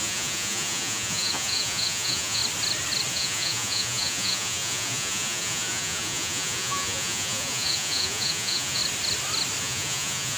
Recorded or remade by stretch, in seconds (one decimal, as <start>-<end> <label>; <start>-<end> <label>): 0.0-2.4 remade; 2.4-3.1 recorded; 3.1-8.8 remade; 8.8-9.6 recorded; 9.6-10.4 remade